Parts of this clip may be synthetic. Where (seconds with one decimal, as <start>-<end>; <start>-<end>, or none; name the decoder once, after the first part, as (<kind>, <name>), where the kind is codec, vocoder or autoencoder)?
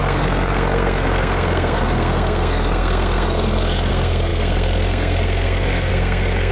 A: 0.0-6.5 (codec, SNAC)